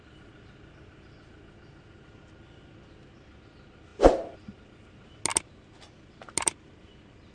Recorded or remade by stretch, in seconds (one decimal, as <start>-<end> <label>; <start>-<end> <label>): 0.0-7.3 recorded